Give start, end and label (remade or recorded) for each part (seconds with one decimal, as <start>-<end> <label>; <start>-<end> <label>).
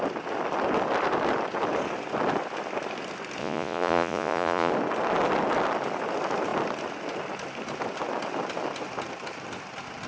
0.0-3.4 recorded; 3.4-4.7 remade; 4.7-10.1 recorded